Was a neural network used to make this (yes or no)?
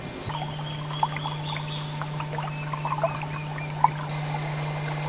no